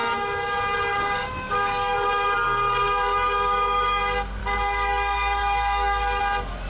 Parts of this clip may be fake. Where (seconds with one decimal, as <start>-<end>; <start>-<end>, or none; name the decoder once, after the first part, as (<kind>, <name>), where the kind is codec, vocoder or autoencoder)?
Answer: 0.0-4.0 (codec, DAC); 4.4-6.2

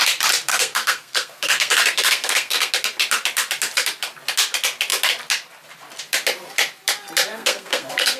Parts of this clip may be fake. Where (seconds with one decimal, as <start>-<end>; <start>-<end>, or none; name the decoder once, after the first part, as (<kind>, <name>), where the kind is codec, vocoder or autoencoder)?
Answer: 0.5-2.7 (codec, SNAC); 7.3-8.2

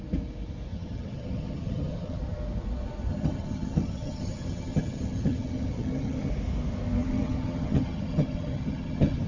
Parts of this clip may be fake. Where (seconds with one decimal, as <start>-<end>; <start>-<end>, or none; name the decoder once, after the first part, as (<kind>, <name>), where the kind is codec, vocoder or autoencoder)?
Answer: 0.7-2.2 (vocoder, HiFi-GAN); 3.1-6.3; 7.0-9.3

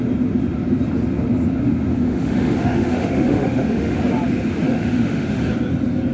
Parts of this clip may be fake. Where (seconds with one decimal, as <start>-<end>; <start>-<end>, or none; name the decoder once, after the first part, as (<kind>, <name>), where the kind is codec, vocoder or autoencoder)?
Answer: 1.9-4.0 (autoencoder, DAC-VAE); 4.7-5.4

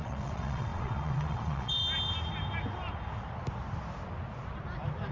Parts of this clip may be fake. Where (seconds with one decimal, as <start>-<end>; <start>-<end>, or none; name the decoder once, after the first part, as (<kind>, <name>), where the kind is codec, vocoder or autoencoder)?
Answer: 0.0-1.8 (vocoder, WaveNeXt)

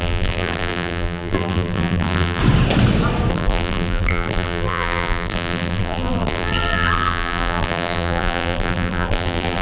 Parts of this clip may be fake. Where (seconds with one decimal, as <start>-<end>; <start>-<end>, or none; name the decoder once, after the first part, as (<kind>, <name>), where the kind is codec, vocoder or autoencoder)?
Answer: 0.0-2.4 (vocoder, BigVGAN v2); 3.3-9.6